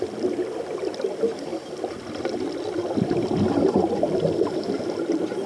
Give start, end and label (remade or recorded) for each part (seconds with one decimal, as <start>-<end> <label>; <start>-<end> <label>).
0.0-5.5 recorded